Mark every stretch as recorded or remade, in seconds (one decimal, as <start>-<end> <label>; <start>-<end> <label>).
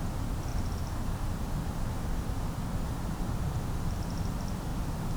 0.0-0.5 recorded; 0.5-3.4 remade; 3.4-4.7 recorded; 4.7-5.2 remade